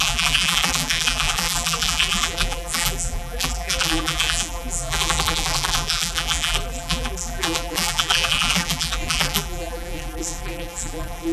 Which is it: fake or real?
fake